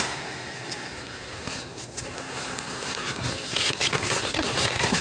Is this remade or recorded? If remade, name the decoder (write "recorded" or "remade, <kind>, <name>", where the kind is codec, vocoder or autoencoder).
remade, codec, SNAC